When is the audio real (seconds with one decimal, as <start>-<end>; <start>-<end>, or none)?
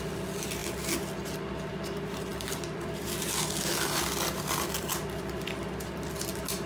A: 0.0-2.3; 6.1-6.7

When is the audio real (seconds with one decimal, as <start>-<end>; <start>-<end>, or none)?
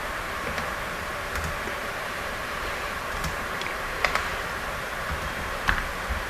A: 1.1-1.8; 4.3-4.8